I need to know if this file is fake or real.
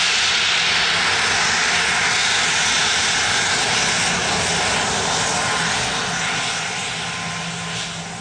real